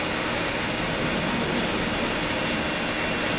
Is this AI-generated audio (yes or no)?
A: no